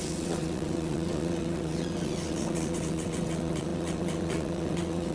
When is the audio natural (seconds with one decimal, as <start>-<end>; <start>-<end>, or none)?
none